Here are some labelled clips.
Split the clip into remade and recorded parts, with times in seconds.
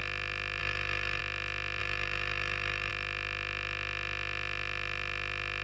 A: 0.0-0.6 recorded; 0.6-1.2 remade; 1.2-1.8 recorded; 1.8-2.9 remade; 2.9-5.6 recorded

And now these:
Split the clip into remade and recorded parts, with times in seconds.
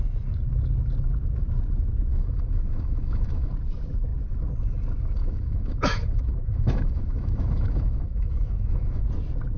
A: 0.0-2.1 recorded; 2.1-3.5 remade; 3.5-5.2 recorded; 5.2-9.0 remade; 9.0-9.6 recorded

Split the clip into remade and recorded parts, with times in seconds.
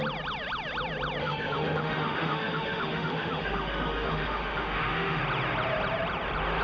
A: 0.0-1.2 recorded; 1.2-5.2 remade; 5.2-6.6 recorded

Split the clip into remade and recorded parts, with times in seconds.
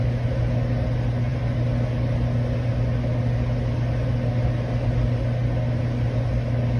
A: 0.0-6.8 recorded